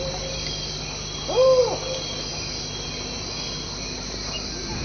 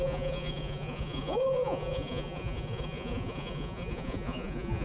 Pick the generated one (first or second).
second